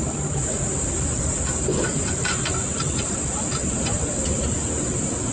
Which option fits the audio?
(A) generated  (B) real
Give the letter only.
A